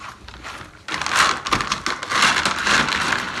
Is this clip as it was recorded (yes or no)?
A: yes